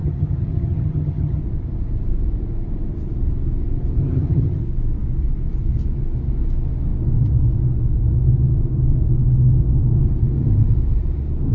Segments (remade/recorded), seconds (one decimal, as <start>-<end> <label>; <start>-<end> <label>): 0.0-1.4 remade; 1.4-4.0 recorded; 4.0-4.6 remade; 4.6-11.5 recorded